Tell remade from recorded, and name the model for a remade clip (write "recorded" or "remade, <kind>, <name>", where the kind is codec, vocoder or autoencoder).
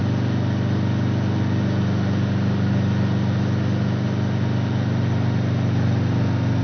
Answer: recorded